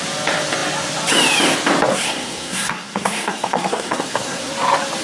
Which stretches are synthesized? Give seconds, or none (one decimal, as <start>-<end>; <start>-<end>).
1.9-4.5